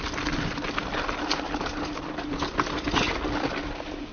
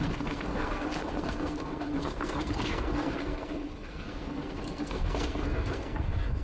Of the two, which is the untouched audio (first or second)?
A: first